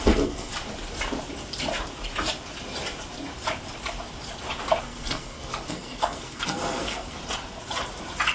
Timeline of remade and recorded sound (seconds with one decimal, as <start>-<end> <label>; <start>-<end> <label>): 0.0-0.5 remade; 0.5-4.8 recorded; 4.8-7.2 remade; 7.2-8.3 recorded